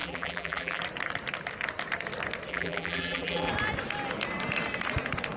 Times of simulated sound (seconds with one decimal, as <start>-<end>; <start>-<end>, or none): 0.0-0.8; 2.5-3.5